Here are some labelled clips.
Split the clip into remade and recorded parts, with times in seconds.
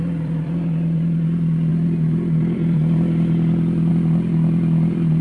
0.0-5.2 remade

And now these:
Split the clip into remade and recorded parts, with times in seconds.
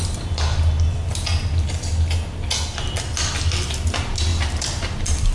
0.0-4.3 recorded; 4.3-5.3 remade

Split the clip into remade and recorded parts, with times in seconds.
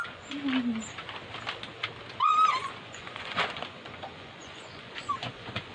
0.0-0.4 remade; 0.4-2.5 recorded; 2.5-5.7 remade